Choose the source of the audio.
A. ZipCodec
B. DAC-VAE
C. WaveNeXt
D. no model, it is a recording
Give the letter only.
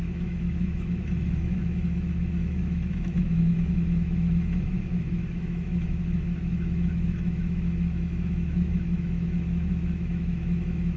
B